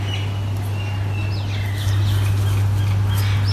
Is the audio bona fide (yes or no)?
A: yes